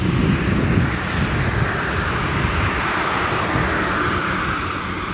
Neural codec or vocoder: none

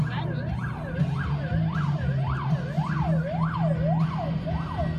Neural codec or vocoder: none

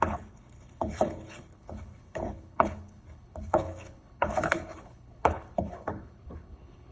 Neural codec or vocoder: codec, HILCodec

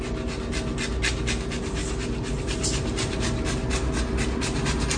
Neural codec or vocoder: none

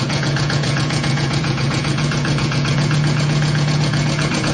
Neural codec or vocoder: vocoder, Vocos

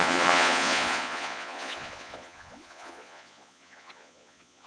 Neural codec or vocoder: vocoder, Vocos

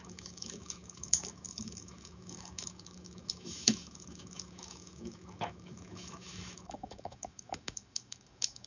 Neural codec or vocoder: autoencoder, DAC-VAE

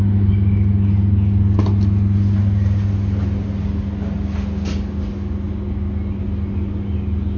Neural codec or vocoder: none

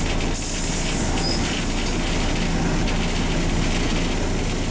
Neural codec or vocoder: none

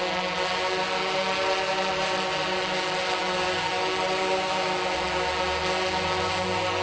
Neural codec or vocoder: none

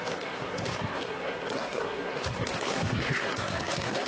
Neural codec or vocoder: codec, SNAC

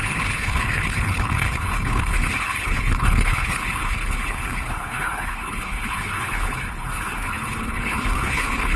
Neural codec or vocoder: codec, HILCodec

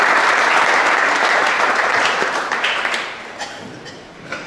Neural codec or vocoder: vocoder, BigVGAN v2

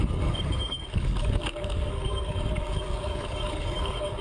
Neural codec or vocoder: codec, DAC